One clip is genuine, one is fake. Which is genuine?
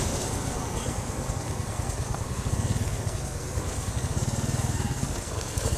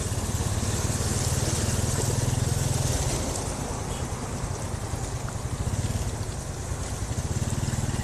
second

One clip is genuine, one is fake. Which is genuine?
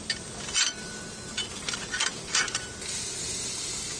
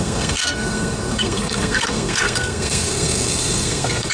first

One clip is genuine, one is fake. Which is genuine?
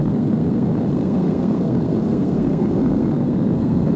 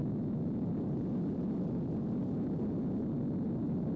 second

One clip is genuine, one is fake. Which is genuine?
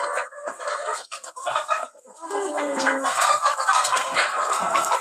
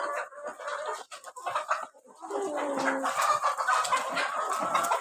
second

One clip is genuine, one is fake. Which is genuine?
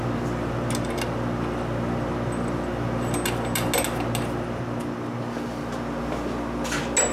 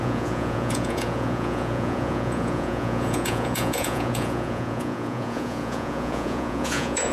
first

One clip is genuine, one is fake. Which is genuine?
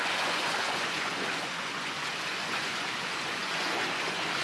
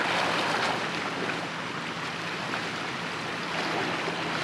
second